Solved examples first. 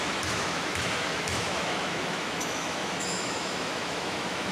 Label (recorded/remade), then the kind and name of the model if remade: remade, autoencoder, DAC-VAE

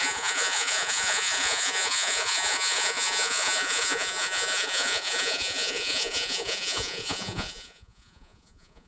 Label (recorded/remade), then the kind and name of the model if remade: remade, vocoder, Vocos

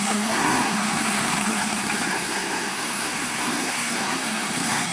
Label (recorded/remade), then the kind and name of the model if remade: remade, codec, SNAC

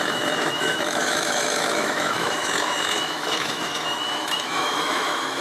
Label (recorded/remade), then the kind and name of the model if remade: remade, autoencoder, DAC-VAE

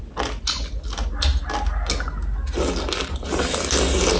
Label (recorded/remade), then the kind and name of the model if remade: recorded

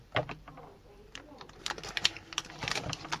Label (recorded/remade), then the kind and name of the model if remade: remade, vocoder, BigVGAN v2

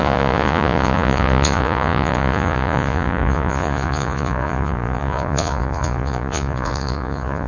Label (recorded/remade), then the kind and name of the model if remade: remade, vocoder, Vocos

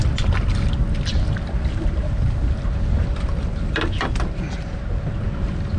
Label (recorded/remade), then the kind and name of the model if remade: recorded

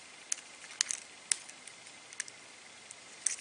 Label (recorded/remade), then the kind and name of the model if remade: recorded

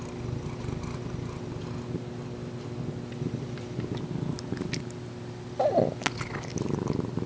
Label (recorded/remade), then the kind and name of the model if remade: recorded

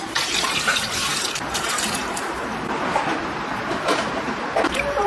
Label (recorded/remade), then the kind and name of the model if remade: remade, vocoder, BigVGAN v2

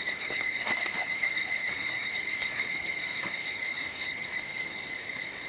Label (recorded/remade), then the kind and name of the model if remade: remade, codec, DAC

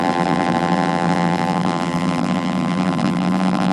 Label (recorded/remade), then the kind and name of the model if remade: remade, vocoder, BigVGAN v2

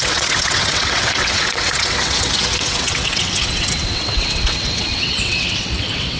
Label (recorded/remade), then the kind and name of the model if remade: remade, vocoder, WaveNeXt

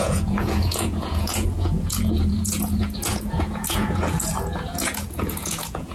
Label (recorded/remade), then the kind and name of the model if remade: remade, vocoder, Vocos